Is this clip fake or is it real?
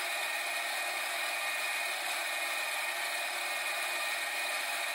real